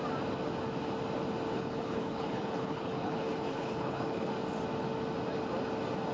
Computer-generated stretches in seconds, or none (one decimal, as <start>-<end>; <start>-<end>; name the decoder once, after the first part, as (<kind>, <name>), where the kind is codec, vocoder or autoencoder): 1.5-4.3 (codec, HILCodec)